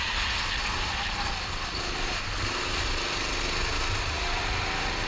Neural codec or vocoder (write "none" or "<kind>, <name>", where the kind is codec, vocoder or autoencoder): none